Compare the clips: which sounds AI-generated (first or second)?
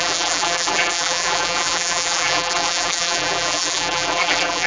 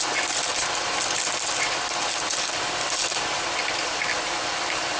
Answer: first